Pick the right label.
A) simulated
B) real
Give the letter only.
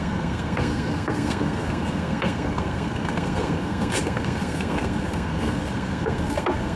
A